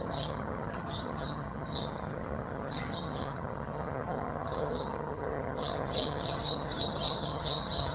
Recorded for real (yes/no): no